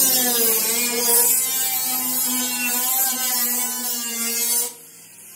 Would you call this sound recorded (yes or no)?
yes